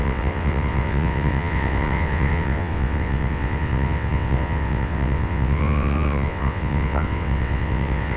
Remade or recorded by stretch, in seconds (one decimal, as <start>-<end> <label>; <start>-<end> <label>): 0.0-8.2 remade